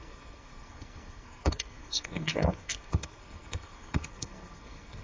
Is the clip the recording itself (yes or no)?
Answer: no